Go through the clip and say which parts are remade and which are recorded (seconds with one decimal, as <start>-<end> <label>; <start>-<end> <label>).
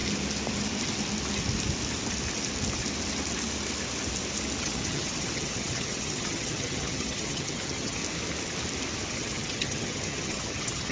0.0-4.6 recorded; 4.6-8.0 remade; 8.0-9.1 recorded; 9.1-10.9 remade